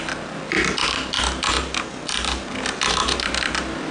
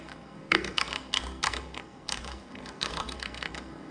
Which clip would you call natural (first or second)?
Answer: first